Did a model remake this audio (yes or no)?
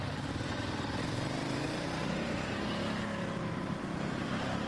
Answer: yes